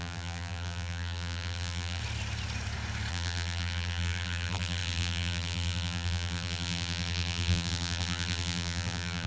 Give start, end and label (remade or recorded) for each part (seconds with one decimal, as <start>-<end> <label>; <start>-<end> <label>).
0.0-2.0 remade; 2.0-3.1 recorded; 3.1-9.3 remade